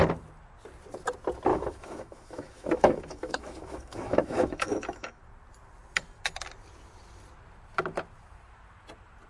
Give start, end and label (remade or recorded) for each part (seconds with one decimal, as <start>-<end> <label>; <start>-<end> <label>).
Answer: 0.0-1.5 recorded; 1.5-5.2 remade; 5.2-9.3 recorded